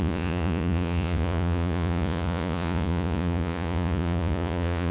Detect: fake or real fake